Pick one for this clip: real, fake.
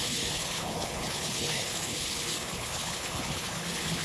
fake